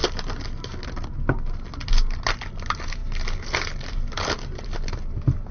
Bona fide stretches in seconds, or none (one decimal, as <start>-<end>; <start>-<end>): 0.0-5.5